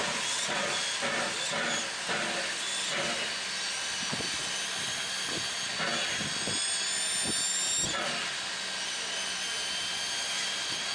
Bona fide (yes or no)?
yes